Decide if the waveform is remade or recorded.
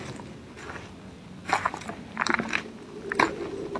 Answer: recorded